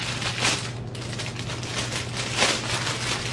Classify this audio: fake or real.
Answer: real